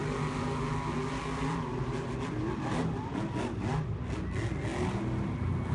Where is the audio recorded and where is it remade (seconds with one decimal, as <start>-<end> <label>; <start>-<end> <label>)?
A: 0.0-5.7 recorded